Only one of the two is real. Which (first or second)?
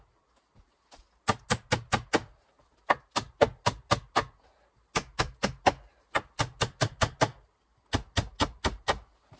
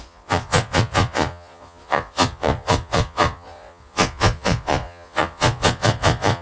first